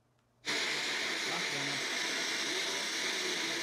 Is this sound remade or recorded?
recorded